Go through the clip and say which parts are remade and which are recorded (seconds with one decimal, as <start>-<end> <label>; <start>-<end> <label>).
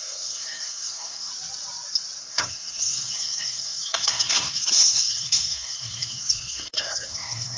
0.0-1.3 remade; 1.3-2.2 recorded; 2.2-7.6 remade